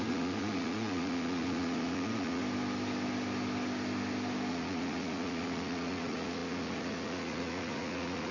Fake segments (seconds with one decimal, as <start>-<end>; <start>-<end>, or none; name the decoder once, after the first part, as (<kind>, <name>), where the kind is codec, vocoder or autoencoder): 0.0-2.4 (vocoder, Vocos); 4.5-8.3

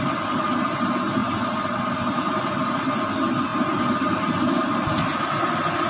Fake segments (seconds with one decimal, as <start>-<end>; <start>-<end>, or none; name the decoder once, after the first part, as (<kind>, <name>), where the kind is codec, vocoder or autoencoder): none

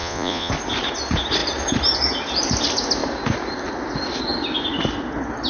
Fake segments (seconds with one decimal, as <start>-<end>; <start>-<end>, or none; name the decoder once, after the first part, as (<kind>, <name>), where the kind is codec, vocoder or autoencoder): 0.0-0.5 (vocoder, Vocos)

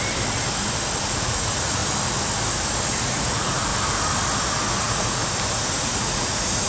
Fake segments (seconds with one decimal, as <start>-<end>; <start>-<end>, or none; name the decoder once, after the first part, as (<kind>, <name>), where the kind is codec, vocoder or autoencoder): 1.0-1.8 (vocoder, Vocos); 3.0-3.7; 4.8-5.2; 5.8-6.7

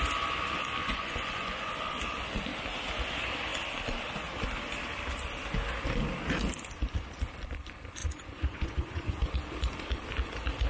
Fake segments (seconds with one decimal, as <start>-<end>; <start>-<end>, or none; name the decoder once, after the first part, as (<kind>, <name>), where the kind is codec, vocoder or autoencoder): 0.8-1.7 (vocoder, Vocos); 8.0-9.1